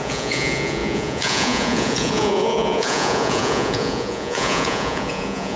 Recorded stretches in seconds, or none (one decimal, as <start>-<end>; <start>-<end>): none